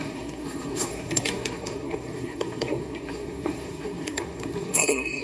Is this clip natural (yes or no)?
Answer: no